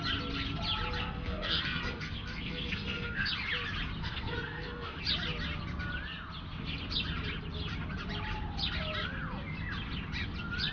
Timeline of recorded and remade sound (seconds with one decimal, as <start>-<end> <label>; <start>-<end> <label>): 0.0-1.0 recorded; 1.0-3.3 remade; 3.3-4.0 recorded; 4.0-5.0 remade; 5.0-10.7 recorded